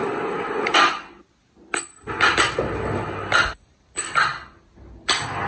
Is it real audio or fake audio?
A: real